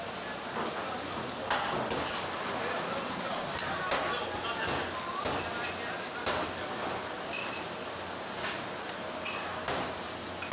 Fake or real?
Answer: real